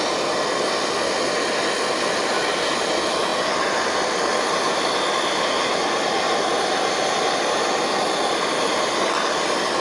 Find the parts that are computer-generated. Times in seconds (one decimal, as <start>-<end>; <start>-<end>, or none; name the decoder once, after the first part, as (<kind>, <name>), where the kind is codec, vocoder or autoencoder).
none